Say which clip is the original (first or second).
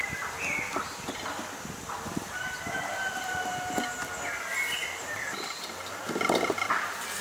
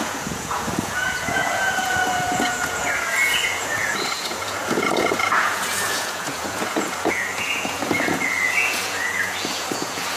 first